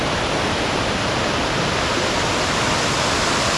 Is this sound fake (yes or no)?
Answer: no